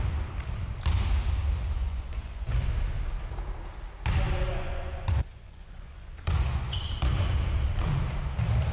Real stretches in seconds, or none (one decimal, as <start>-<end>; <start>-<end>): 0.0-1.8; 2.7-4.5; 6.8-8.7